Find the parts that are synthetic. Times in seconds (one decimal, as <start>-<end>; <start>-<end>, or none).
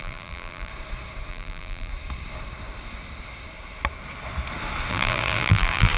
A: 0.0-0.7; 1.3-1.9; 4.9-6.0